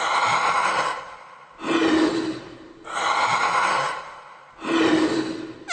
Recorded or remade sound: recorded